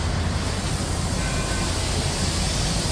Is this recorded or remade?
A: recorded